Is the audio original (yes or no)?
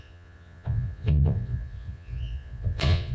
no